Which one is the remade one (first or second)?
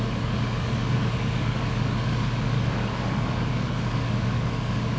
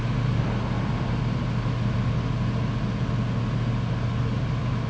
first